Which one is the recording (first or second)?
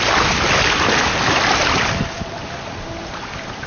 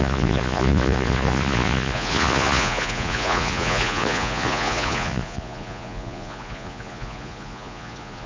first